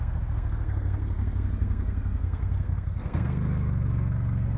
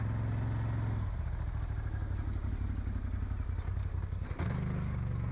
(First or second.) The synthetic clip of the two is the first